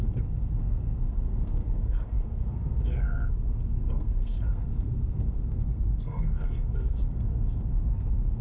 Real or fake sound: fake